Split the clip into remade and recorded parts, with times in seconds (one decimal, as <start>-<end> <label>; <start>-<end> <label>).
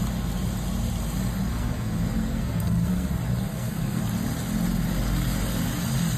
0.0-1.5 recorded; 1.5-3.1 remade; 3.1-3.5 recorded; 3.5-4.0 remade; 4.0-6.2 recorded